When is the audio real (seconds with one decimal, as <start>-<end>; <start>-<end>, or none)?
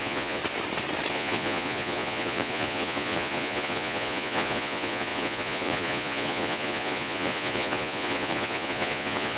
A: 0.4-1.1